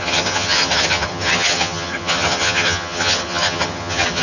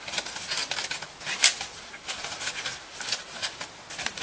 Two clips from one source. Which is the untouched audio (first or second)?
second